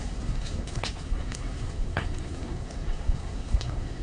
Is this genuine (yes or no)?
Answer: no